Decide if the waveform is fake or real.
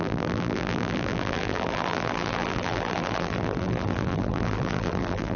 fake